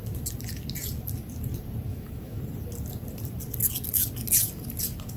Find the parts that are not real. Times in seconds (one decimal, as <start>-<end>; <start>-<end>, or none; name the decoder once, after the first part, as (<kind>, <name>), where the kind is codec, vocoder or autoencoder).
1.9-2.4 (autoencoder, DAC-VAE)